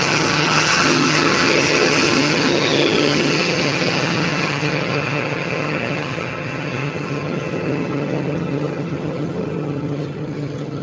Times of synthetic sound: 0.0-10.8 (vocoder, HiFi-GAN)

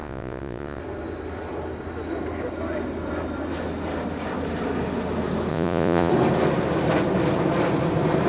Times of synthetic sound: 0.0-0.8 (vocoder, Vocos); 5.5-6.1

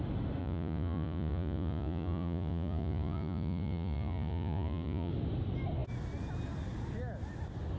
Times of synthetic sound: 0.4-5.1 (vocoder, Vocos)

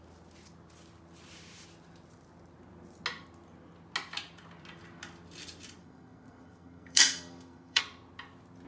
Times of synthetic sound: 5.8-7.8 (codec, SNAC)